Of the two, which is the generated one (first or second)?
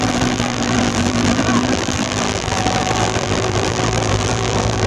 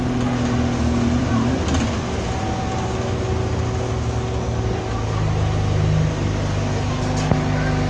first